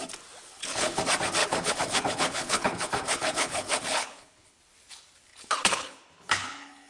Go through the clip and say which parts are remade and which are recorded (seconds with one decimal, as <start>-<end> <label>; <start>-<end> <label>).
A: 0.0-0.4 recorded; 0.4-1.0 remade; 1.0-1.4 recorded; 1.4-4.6 remade; 4.6-5.3 recorded; 5.3-6.9 remade